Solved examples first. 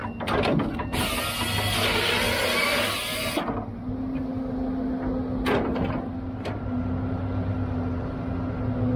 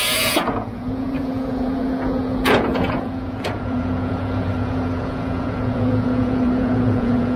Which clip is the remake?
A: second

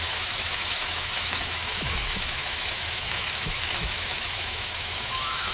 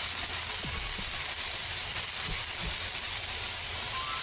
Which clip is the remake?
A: first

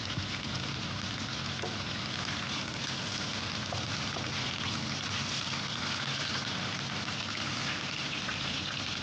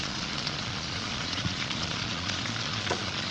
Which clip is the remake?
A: second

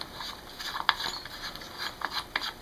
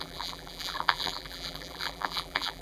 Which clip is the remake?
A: second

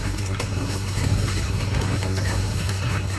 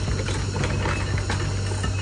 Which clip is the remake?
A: first